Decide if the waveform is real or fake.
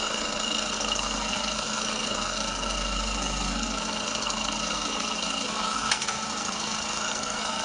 fake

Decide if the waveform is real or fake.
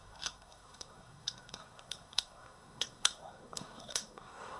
fake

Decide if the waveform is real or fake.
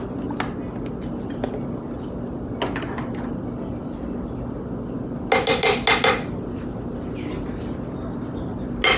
real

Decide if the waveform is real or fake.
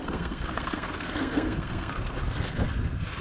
fake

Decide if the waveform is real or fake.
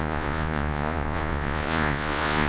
fake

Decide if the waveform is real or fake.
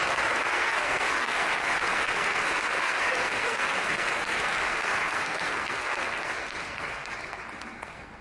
fake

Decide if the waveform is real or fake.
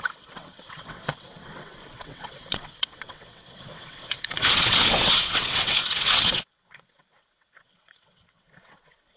fake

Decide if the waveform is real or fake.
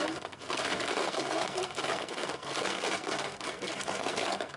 fake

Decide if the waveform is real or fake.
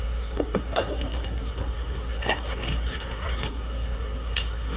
fake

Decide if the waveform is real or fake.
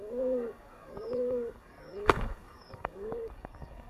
fake